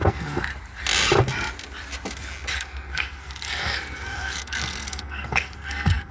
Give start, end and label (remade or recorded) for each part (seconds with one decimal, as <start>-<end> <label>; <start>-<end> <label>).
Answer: 0.0-0.5 remade; 0.5-2.5 recorded; 2.5-6.1 remade